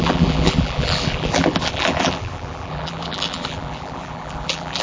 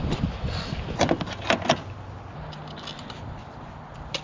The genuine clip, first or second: second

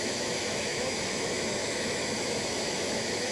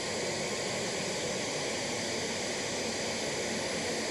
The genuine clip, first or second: second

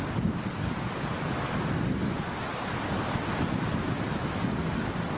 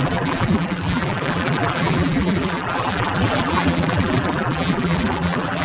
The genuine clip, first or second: first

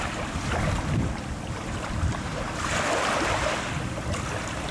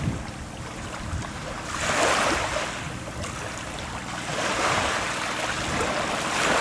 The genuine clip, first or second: second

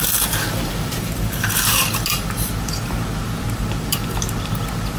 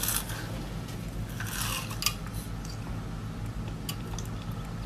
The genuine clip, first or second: second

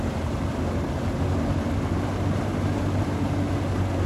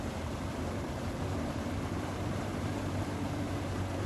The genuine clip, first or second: first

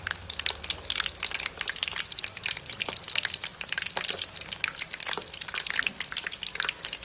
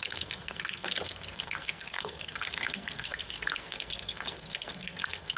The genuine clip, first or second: first